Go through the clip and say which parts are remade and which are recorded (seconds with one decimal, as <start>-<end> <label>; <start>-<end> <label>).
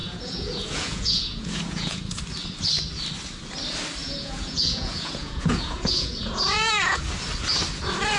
0.0-2.2 remade; 2.2-4.0 recorded; 4.0-7.0 remade; 7.0-8.2 recorded